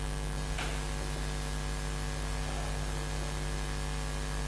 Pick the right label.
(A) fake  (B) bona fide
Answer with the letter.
B